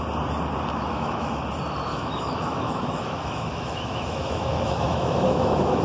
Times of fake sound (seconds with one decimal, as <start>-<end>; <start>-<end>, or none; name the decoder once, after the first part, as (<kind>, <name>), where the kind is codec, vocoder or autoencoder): 0.7-1.4 (autoencoder, DAC-VAE); 1.9-5.8